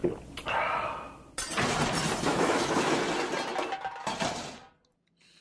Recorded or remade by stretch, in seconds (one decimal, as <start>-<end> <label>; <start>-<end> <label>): 0.0-2.3 recorded; 2.3-3.0 remade; 3.0-5.4 recorded